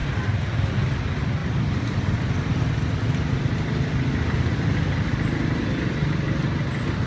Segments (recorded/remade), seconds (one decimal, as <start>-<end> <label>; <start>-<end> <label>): 0.0-1.4 recorded; 1.4-5.2 remade; 5.2-7.1 recorded